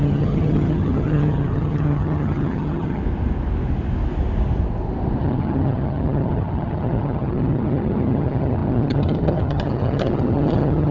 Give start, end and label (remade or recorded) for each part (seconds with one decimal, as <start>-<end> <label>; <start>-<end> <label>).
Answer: 0.0-3.0 remade; 3.0-5.2 recorded; 5.2-10.9 remade